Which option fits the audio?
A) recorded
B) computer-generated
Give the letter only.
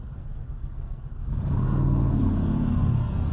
B